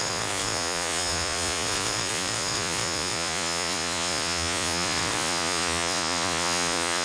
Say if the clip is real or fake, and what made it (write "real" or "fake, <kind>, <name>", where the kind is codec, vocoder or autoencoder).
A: fake, vocoder, Vocos